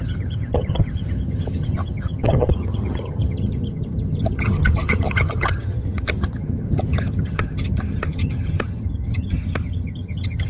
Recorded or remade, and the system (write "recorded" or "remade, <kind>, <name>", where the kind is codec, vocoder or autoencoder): remade, vocoder, HiFi-GAN